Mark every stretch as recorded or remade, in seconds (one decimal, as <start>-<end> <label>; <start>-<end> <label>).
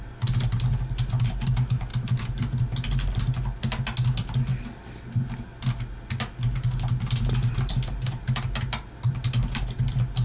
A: 0.0-10.2 recorded